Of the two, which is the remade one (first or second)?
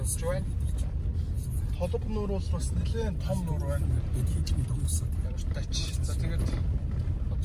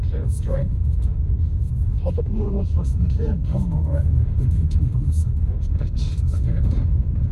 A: second